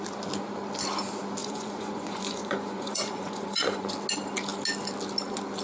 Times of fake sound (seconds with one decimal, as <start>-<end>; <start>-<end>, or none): 1.4-3.9